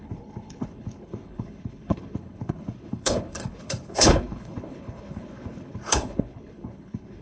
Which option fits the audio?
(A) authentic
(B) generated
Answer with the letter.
B